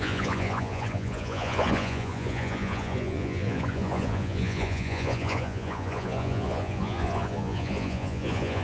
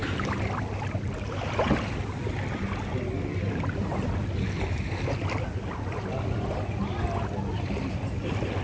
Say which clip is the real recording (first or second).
second